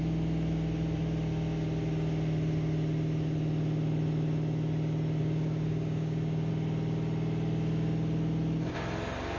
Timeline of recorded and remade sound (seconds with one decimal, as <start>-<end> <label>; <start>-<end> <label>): 0.0-5.2 recorded; 5.2-6.5 remade; 6.5-9.4 recorded